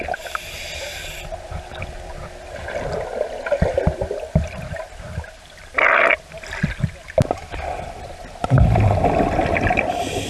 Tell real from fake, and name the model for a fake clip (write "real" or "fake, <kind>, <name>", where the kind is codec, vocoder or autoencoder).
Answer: real